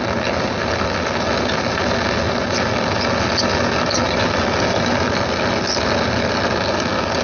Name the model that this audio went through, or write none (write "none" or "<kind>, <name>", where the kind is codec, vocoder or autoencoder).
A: none